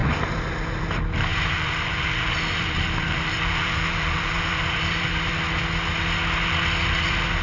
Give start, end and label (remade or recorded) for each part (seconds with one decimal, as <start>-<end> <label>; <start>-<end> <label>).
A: 0.0-1.3 recorded; 1.3-5.3 remade; 5.3-7.4 recorded